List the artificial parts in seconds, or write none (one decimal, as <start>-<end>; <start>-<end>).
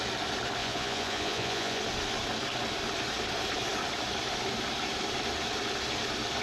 0.6-1.8